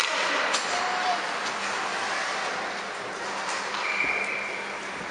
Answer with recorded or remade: recorded